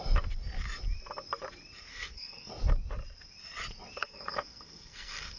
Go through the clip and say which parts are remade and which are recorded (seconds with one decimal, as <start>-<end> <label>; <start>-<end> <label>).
0.0-1.9 recorded; 1.9-2.5 remade; 2.5-4.0 recorded; 4.0-5.4 remade